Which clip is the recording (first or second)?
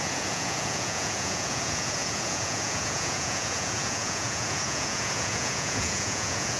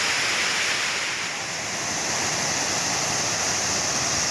second